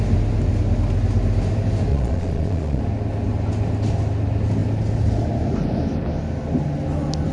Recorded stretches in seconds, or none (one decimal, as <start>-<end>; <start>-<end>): 0.0-1.9; 2.8-7.3